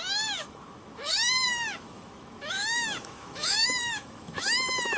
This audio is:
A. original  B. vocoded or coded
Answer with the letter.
B